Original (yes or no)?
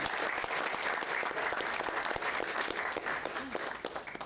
yes